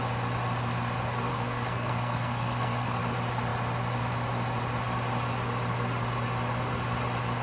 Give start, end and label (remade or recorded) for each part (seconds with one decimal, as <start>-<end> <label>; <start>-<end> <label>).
0.0-1.3 recorded; 1.3-3.0 remade; 3.0-7.4 recorded